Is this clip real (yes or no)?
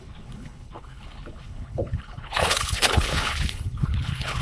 no